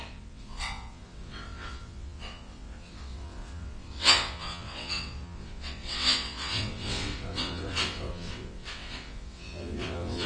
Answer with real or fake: fake